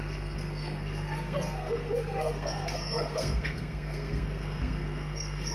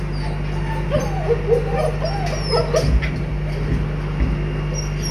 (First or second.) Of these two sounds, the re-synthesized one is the first